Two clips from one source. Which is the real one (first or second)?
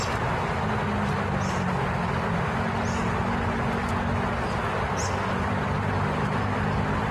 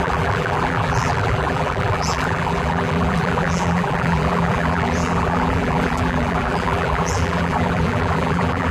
first